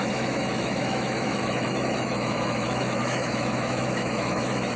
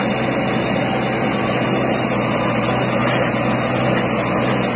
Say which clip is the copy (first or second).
first